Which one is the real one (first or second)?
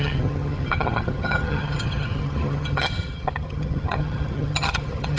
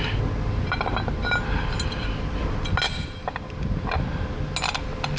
second